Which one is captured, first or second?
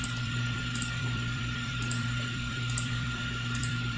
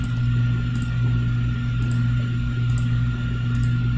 second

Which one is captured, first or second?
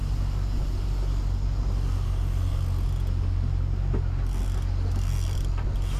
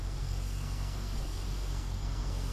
first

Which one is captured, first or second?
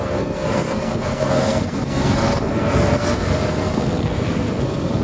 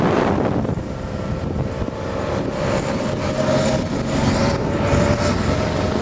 second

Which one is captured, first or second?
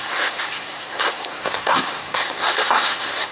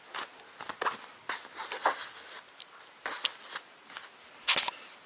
second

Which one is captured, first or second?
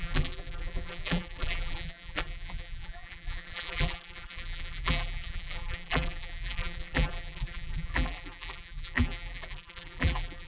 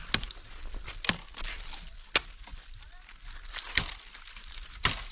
second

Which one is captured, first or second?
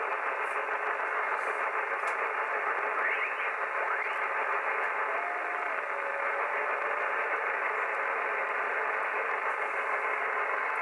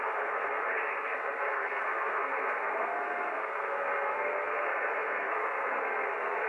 first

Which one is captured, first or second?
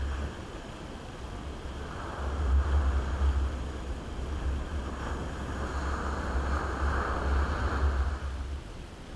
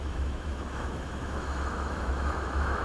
first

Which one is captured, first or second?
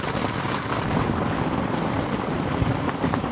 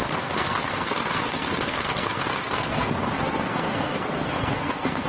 first